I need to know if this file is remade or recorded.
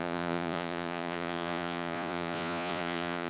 remade